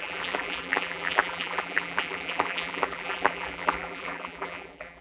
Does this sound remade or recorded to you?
remade